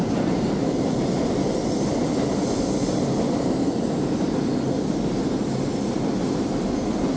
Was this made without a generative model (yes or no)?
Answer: yes